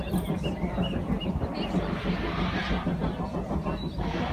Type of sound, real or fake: real